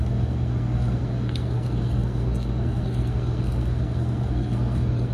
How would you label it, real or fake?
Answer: fake